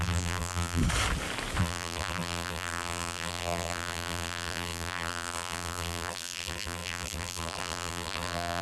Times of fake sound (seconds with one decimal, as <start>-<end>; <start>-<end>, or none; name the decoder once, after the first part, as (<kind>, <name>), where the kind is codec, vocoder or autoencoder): 0.0-0.8 (vocoder, BigVGAN v2); 1.6-8.6

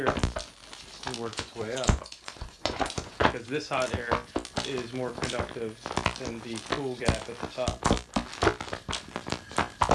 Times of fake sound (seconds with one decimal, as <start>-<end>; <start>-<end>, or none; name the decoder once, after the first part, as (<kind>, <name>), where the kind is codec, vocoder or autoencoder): 1.3-3.3 (vocoder, Vocos)

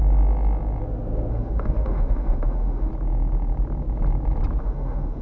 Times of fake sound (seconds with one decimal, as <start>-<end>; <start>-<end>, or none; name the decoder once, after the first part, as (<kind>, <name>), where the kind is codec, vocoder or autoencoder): 1.3-2.9 (autoencoder, DAC-VAE); 4.6-5.2

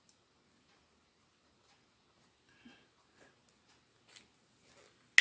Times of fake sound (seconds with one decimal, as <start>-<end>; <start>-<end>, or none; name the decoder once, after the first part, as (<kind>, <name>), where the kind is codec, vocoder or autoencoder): none

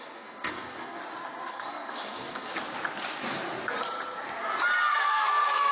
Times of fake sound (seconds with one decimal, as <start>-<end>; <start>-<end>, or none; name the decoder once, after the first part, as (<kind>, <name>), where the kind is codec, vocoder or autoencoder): 0.0-1.0 (codec, SNAC); 1.5-2.5; 4.9-5.7

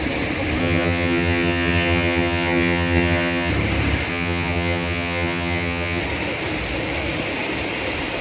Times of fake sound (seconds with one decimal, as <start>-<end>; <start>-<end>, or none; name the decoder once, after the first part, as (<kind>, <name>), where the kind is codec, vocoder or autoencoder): 0.6-3.5 (vocoder, HiFi-GAN); 4.1-6.0